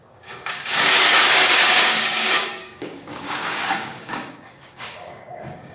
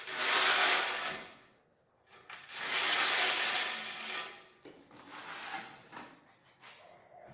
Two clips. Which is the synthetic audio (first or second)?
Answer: first